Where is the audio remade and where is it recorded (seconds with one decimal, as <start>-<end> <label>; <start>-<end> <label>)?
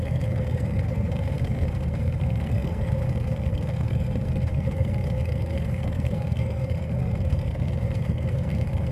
0.0-8.9 remade